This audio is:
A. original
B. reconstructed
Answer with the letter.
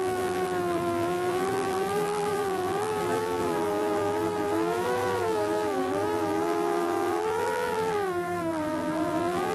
B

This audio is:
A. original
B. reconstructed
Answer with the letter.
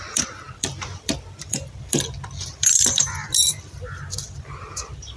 B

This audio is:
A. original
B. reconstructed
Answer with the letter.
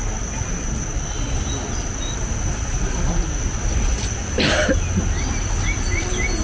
A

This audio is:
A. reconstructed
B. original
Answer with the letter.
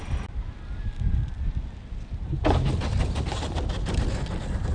B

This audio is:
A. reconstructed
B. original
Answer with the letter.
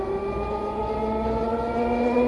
B